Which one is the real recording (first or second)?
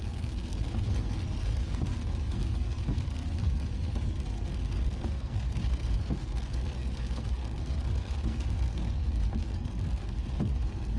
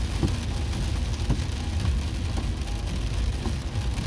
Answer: second